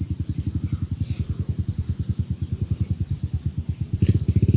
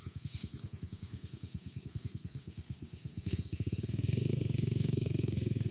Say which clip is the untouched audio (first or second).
first